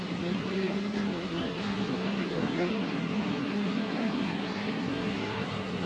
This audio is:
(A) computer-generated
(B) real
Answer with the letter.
A